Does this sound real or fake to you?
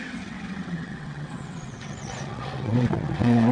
fake